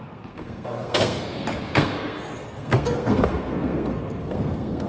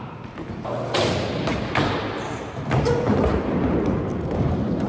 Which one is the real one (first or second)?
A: second